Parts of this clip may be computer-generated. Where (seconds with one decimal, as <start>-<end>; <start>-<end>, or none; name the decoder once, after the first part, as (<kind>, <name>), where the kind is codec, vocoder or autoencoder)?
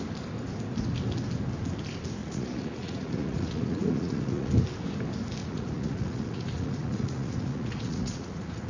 2.2-4.5 (vocoder, Vocos); 5.4-8.7